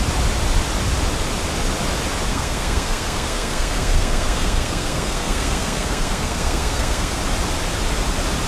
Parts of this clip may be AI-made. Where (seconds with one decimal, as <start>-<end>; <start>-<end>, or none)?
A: 2.3-7.2